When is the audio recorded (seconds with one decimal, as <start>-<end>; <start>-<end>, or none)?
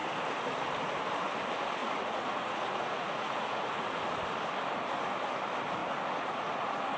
0.0-1.8; 4.0-5.8